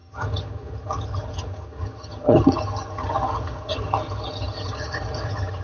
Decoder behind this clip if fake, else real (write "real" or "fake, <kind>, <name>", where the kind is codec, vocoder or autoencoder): fake, vocoder, HiFi-GAN